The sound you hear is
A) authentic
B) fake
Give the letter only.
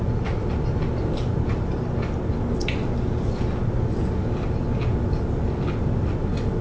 A